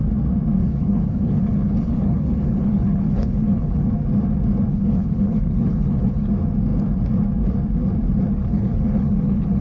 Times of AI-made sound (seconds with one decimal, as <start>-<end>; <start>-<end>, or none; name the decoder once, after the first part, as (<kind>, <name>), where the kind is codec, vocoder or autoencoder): 0.6-3.9 (codec, HILCodec); 4.7-6.3; 8.4-9.6